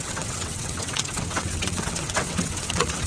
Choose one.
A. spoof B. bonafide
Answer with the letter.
A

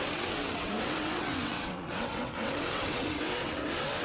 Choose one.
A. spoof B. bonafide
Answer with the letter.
A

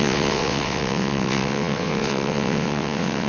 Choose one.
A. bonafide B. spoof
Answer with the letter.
B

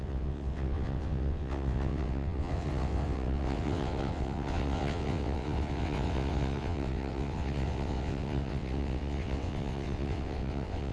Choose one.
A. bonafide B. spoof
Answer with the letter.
B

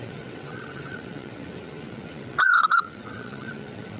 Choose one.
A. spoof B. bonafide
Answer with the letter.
A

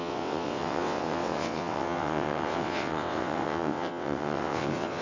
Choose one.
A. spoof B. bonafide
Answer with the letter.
A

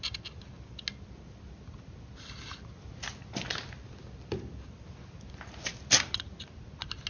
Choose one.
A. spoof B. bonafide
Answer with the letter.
B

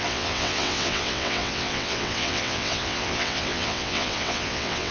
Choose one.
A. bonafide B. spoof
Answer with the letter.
B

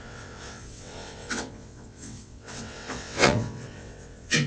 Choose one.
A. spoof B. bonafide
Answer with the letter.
A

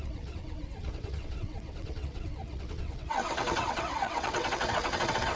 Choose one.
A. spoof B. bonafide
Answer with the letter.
A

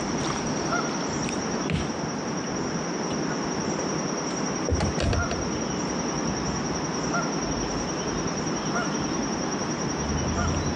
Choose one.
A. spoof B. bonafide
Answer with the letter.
B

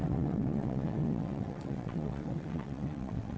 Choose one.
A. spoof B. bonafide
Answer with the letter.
A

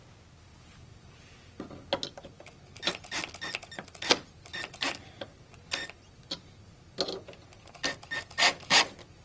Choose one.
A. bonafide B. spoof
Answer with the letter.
A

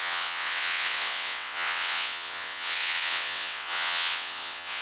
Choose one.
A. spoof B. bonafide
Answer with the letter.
A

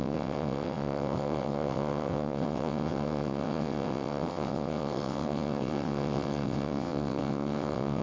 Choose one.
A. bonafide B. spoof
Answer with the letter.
B